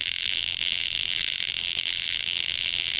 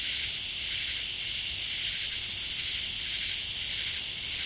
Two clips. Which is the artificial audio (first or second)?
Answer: first